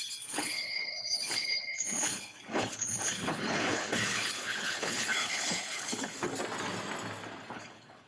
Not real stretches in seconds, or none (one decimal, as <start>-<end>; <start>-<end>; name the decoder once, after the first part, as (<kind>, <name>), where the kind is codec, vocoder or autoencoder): 0.0-6.3 (codec, HILCodec); 7.5-8.1